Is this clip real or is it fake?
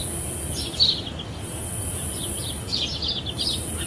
real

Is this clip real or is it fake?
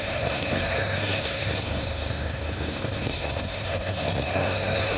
fake